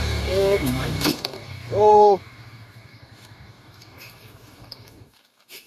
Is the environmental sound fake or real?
fake